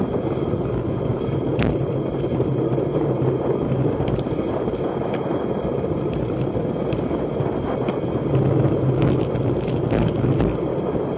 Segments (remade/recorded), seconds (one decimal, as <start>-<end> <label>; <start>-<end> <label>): 0.0-1.1 recorded; 1.1-6.0 remade; 6.0-10.7 recorded; 10.7-11.2 remade